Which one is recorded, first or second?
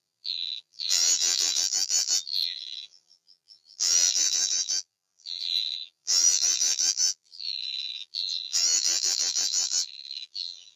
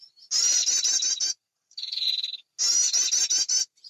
second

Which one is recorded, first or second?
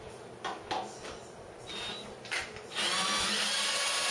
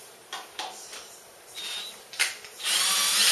first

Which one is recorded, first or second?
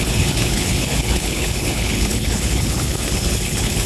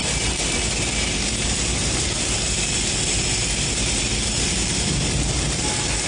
second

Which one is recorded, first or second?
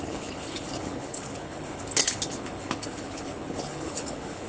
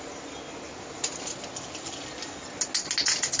second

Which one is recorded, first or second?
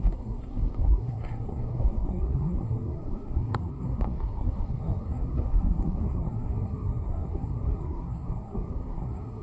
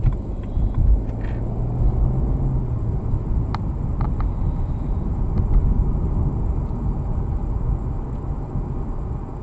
second